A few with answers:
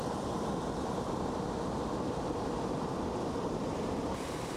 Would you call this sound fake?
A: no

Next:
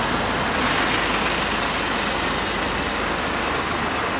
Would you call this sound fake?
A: no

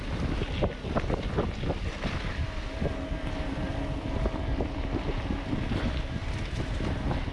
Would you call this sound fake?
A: no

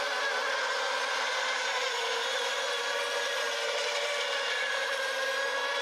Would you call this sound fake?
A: no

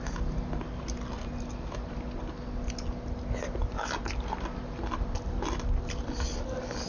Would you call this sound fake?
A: no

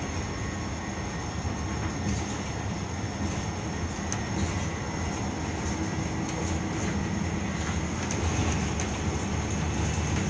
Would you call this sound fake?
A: no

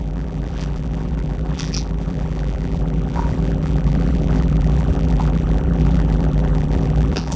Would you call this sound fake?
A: yes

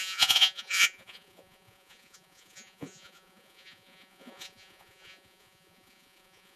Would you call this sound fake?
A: yes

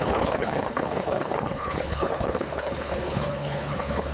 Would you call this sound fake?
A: yes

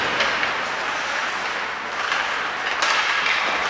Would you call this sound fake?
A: no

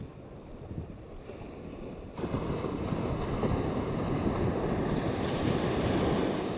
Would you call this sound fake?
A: no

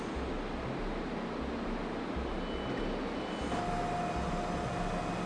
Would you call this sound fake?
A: no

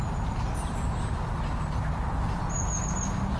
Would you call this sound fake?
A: no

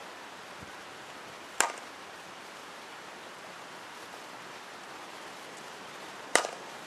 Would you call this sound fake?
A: yes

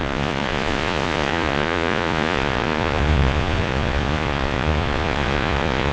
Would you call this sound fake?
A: yes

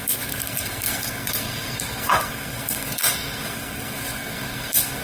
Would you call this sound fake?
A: yes